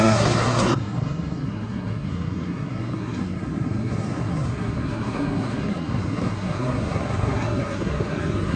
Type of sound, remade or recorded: remade